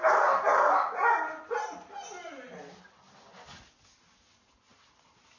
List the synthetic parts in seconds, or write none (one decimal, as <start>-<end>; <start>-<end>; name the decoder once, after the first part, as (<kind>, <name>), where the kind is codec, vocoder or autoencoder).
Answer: 0.5-1.5 (vocoder, BigVGAN v2)